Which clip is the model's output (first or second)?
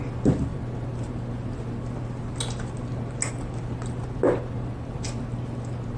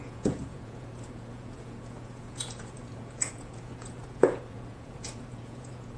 second